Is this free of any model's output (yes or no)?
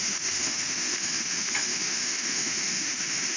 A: no